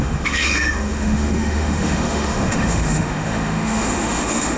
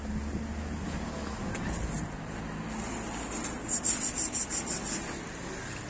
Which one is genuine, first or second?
second